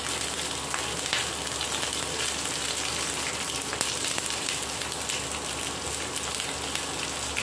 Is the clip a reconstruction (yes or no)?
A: no